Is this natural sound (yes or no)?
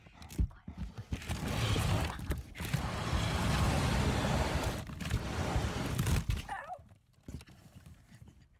yes